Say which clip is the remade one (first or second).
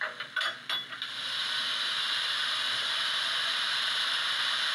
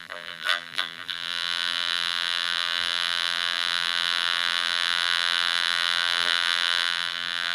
second